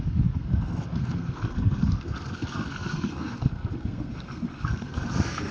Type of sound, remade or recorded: remade